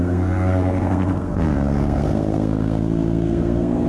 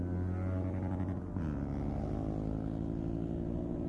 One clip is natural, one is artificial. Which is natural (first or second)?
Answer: second